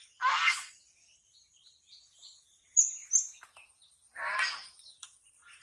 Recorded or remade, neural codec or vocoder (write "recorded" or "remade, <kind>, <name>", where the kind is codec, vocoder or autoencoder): remade, vocoder, BigVGAN v2